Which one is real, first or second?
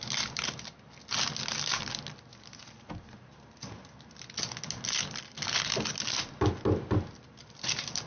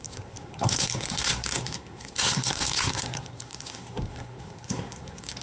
first